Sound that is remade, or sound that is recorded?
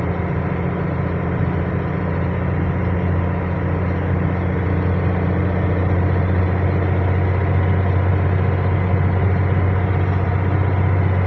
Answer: recorded